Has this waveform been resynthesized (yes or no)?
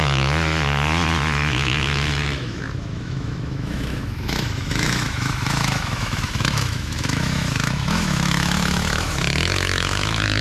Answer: yes